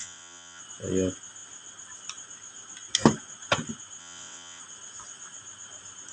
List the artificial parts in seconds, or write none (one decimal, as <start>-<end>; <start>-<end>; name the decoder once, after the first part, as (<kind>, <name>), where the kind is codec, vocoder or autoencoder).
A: 0.0-0.6 (vocoder, WaveNeXt); 4.0-4.6

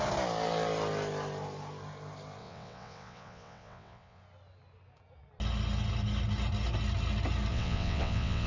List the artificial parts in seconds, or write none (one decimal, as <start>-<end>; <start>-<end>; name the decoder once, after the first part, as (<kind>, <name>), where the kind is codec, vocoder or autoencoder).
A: 2.4-4.2 (vocoder, WaveNeXt); 7.5-8.5

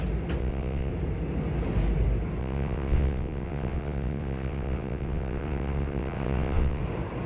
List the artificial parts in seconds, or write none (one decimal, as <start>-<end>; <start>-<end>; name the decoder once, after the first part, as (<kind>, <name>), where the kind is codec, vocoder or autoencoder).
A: 0.4-0.9 (vocoder, WaveNeXt); 2.4-6.8

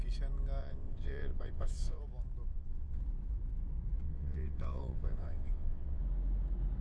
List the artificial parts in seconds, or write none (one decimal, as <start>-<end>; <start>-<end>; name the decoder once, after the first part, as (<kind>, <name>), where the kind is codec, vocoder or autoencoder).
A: 0.6-2.0 (vocoder, WaveNeXt); 2.5-3.0; 4.0-6.0

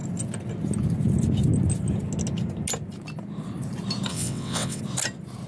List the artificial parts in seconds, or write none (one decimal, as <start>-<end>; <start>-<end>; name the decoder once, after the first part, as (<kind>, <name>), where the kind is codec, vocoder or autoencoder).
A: 4.1-4.8 (vocoder, WaveNeXt)

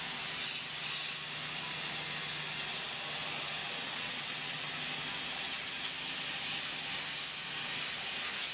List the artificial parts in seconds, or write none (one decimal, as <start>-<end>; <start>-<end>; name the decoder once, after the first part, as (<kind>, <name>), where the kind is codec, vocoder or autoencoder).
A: 3.6-4.7 (vocoder, WaveNeXt)

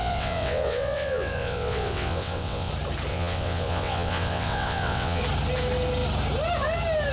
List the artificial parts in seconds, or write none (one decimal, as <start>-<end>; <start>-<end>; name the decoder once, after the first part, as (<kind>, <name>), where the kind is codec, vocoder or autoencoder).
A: 0.0-2.7 (vocoder, WaveNeXt); 3.1-5.2

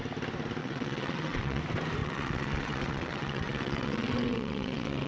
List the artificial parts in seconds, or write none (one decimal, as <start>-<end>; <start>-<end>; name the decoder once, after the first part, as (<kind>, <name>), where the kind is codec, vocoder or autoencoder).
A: 0.6-1.6 (vocoder, WaveNeXt); 2.0-5.1